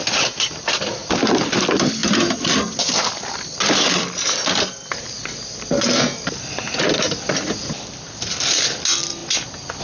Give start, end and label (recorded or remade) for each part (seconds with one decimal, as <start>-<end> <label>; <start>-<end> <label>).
0.0-9.8 recorded